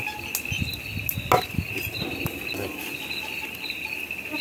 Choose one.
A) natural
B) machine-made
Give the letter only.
A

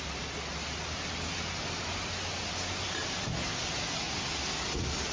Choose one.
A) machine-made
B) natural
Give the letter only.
B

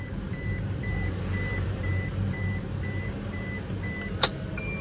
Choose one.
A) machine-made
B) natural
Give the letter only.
A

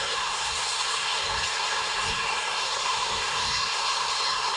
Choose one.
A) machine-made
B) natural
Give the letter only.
A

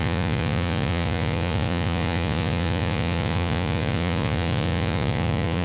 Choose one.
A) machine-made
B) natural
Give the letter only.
A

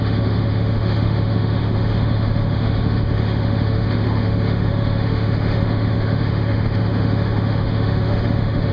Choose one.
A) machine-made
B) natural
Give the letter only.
A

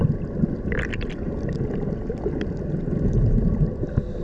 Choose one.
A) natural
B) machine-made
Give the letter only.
A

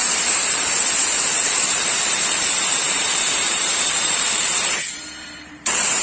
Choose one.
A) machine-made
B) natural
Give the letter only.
A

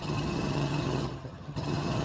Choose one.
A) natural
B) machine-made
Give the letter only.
B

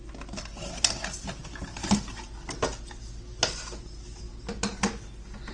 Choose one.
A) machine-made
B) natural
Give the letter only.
B